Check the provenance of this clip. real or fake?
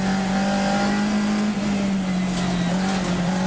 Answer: real